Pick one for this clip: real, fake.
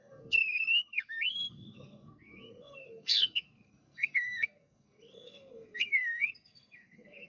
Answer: fake